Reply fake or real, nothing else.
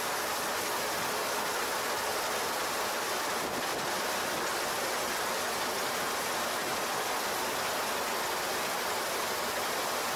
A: real